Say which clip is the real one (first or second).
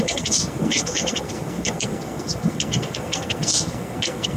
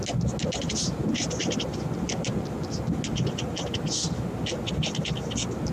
second